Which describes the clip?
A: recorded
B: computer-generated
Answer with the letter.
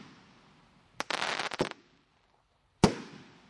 A